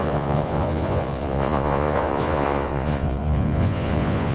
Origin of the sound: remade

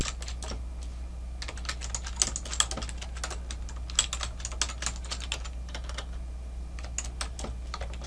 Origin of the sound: recorded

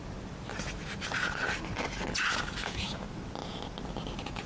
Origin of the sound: recorded